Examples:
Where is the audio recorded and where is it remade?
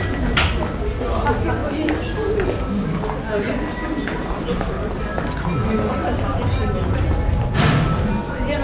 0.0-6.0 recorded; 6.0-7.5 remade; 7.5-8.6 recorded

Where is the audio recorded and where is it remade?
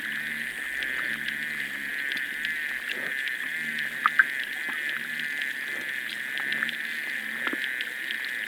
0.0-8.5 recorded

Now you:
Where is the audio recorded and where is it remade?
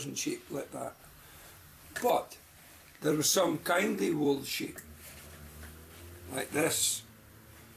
0.0-1.0 recorded; 1.0-2.1 remade; 2.1-2.9 recorded; 2.9-6.0 remade; 6.0-7.8 recorded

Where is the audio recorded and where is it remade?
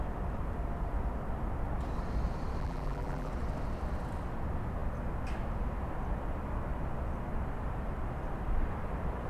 0.0-2.6 recorded; 2.6-3.3 remade; 3.3-9.3 recorded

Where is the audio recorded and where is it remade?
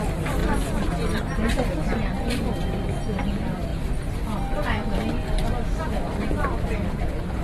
0.0-7.4 recorded